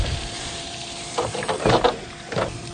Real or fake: fake